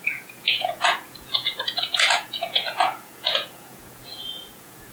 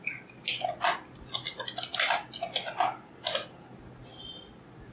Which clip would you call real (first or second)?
second